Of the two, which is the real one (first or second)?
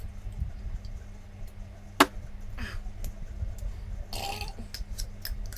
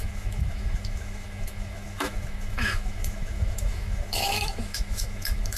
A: first